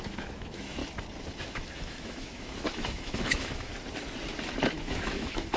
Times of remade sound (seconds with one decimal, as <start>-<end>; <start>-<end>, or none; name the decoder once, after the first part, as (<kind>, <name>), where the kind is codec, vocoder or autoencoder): 0.0-0.8 (autoencoder, DAC-VAE); 1.4-3.7; 4.8-5.6